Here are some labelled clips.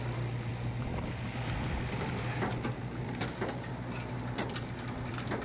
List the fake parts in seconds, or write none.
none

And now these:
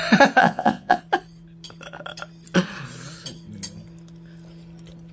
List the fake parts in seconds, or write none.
0.4-1.0 (vocoder, Vocos)